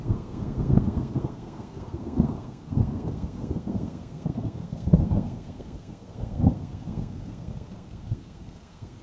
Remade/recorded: remade